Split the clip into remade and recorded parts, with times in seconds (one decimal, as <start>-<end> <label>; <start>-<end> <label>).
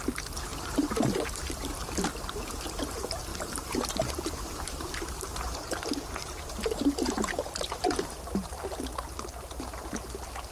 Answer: 0.0-0.5 recorded; 0.5-1.9 remade; 1.9-3.3 recorded; 3.3-5.0 remade; 5.0-6.2 recorded; 6.2-8.8 remade; 8.8-10.5 recorded